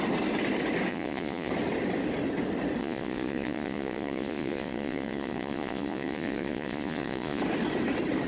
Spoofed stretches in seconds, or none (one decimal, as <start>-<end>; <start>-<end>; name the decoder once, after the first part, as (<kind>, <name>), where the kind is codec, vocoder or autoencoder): 0.9-1.5 (vocoder, Vocos); 2.8-7.4